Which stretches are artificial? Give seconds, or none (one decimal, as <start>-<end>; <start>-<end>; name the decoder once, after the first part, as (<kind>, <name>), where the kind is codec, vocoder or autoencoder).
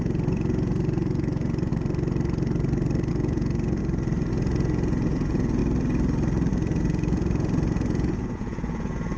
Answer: 0.0-1.7 (vocoder, Vocos); 3.1-3.8; 4.3-5.6; 6.5-9.2